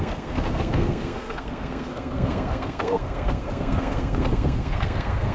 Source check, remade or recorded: remade